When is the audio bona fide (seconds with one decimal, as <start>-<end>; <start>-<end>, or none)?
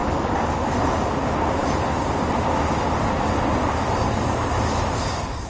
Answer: 0.9-1.6; 4.9-5.5